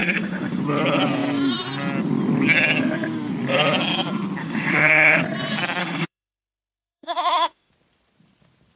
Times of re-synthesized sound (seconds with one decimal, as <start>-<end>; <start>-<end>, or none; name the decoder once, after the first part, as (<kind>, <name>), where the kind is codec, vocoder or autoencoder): 0.0-0.6 (autoencoder, DAC-VAE); 4.4-5.2; 5.8-7.7